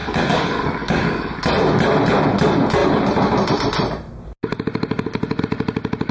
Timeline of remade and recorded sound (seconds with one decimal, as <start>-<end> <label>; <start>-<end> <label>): 0.0-1.4 remade; 1.4-6.1 recorded